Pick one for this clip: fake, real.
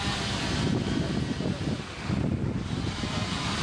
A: real